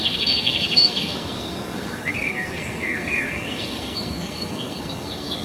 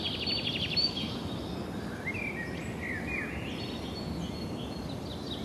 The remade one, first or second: first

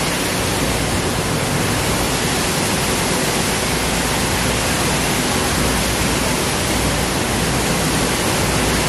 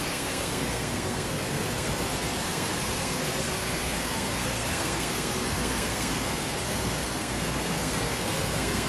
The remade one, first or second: second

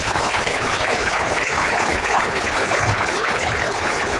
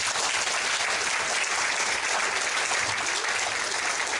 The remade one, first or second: first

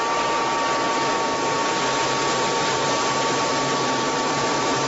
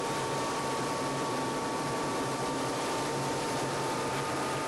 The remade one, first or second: second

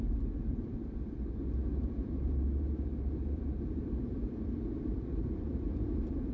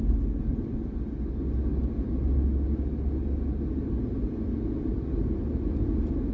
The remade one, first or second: first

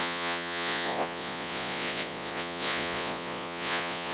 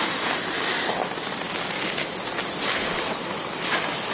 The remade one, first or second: first